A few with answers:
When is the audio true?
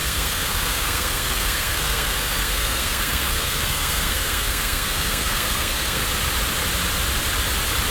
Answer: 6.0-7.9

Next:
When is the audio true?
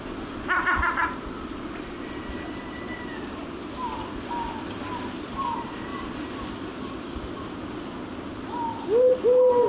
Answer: 0.0-9.7